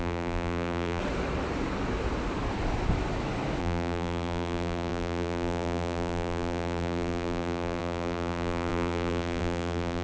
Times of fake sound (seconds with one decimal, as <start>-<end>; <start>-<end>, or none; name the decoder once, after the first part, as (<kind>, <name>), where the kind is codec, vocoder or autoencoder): 0.0-1.0 (vocoder, BigVGAN v2); 3.6-10.0